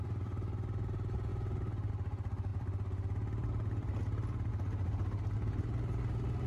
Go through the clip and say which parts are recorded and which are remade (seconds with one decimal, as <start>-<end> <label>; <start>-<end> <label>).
0.0-2.5 recorded; 2.5-4.5 remade; 4.5-6.5 recorded